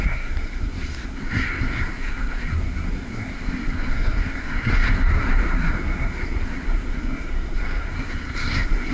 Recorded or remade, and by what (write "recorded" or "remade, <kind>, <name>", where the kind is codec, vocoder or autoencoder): remade, codec, SNAC